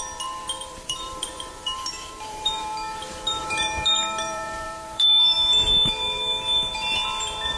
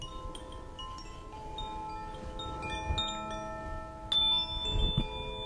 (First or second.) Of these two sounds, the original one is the second